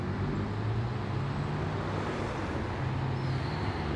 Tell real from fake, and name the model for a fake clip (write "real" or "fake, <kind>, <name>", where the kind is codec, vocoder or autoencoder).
real